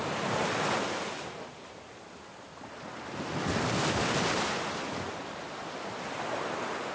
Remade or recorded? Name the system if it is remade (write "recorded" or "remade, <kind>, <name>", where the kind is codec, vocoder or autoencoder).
recorded